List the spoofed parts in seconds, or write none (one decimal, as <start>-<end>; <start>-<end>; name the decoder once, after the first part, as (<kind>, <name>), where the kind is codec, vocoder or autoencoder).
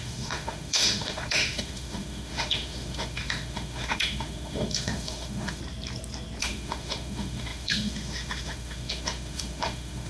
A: 0.0-5.6 (autoencoder, DAC-VAE); 6.4-10.1